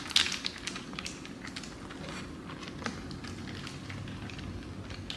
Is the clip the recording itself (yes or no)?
yes